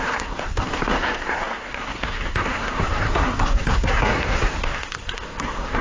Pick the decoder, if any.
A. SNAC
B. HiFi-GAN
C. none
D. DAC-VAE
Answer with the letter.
A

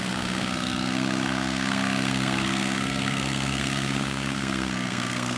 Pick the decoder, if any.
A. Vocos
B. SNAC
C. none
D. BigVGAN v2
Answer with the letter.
B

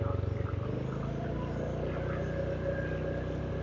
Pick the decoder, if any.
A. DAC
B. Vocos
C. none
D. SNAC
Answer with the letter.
C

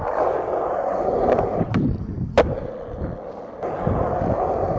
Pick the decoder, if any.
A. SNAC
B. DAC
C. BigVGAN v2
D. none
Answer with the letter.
D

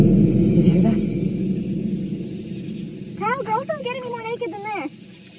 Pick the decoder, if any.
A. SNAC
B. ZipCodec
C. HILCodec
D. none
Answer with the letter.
D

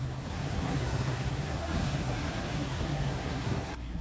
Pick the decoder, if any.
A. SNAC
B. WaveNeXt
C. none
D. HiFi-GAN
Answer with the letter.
A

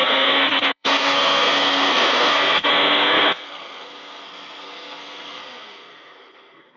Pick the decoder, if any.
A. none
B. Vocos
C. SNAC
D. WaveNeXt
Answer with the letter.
C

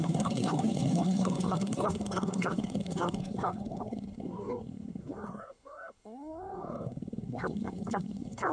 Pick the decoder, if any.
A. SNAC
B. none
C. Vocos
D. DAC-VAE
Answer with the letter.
A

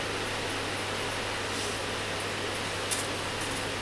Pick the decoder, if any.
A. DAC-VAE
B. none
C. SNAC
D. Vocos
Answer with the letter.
B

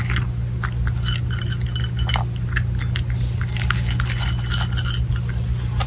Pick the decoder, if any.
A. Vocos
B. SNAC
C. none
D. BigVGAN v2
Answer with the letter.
C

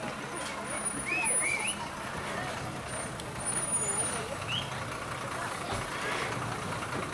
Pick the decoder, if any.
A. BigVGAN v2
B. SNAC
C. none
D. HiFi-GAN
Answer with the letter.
C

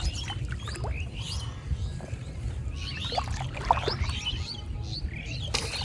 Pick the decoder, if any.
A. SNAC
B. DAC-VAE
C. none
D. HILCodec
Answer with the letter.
C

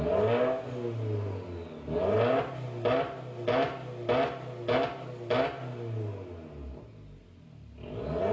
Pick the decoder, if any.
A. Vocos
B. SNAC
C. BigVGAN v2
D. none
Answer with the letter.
D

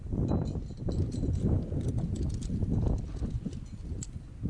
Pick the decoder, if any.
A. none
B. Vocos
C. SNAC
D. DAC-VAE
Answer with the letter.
A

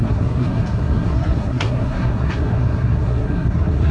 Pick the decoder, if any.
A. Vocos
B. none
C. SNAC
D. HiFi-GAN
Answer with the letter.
C